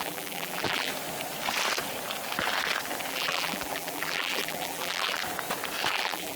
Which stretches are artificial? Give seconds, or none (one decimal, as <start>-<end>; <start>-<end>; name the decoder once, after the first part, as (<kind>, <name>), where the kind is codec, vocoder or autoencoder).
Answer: 0.0-0.9 (vocoder, BigVGAN v2); 3.1-5.2; 5.9-6.4